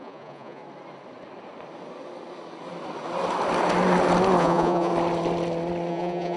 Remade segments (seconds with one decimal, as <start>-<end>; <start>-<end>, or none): 0.0-0.6; 4.4-4.9; 5.9-6.4